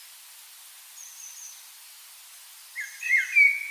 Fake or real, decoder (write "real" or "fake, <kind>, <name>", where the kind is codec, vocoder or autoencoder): real